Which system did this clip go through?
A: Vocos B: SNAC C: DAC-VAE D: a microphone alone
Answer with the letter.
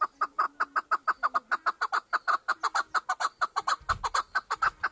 D